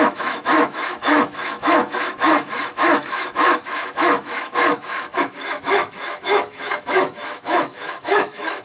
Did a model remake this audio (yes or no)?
yes